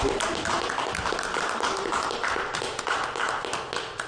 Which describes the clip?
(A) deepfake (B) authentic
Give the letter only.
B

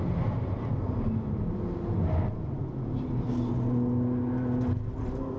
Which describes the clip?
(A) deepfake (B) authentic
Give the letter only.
B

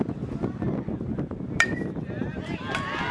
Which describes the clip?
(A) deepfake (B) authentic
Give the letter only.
B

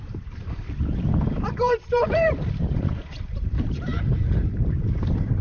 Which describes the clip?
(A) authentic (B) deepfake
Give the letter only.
B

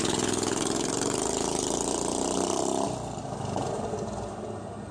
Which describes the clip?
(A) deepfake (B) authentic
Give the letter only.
B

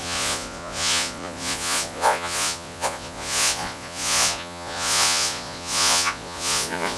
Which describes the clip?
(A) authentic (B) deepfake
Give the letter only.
B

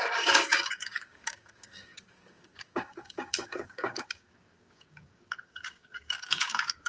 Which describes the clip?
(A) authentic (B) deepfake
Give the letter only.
B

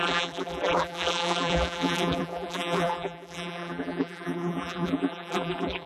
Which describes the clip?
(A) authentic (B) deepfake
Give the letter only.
B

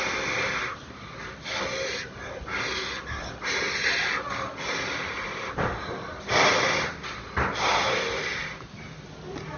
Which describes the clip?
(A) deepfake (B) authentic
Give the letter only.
B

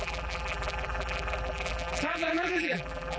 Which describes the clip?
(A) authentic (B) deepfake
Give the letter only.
B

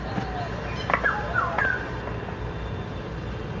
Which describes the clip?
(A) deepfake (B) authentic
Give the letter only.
B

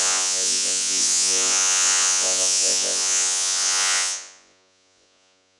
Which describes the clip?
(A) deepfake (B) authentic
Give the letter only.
A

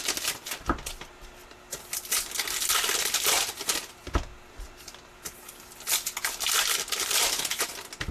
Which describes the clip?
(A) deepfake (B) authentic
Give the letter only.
B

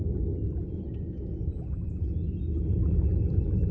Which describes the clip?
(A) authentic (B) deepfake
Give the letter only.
A